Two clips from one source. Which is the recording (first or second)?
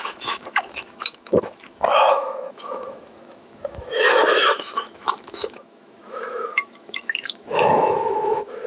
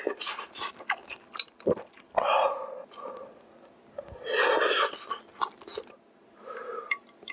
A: second